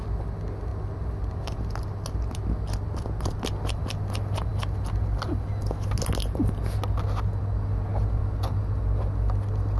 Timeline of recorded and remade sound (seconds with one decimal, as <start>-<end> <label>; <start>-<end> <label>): 0.0-9.8 recorded